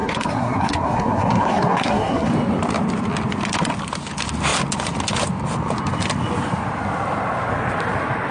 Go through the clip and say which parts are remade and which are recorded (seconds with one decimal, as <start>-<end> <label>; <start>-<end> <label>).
0.0-2.3 remade; 2.3-8.3 recorded